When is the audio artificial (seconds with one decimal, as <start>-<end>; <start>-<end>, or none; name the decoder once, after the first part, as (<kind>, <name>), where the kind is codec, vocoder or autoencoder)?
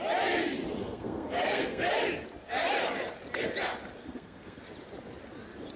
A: 0.8-1.9 (codec, SNAC); 4.0-4.6